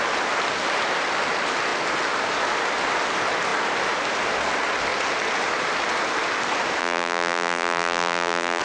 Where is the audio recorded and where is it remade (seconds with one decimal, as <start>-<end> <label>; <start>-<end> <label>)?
0.0-6.8 recorded; 6.8-8.6 remade